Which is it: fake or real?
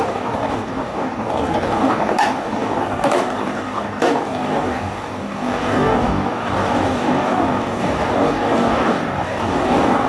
fake